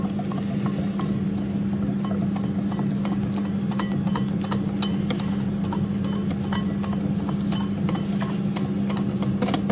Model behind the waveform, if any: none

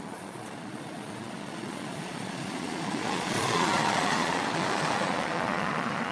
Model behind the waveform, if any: vocoder, Vocos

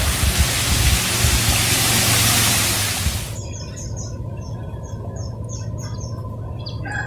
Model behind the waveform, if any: none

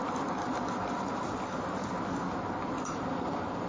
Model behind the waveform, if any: none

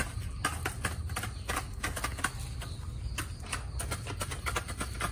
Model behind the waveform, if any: none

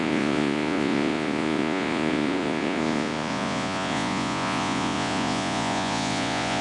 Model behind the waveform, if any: vocoder, Vocos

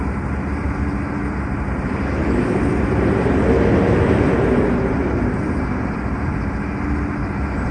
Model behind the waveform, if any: none